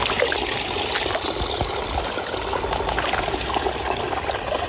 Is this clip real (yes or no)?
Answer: yes